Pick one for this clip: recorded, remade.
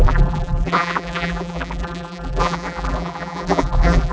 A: remade